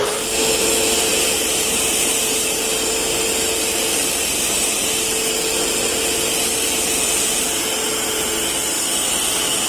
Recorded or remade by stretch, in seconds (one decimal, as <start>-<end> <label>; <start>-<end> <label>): 0.0-1.1 recorded; 1.1-2.5 remade; 2.5-9.7 recorded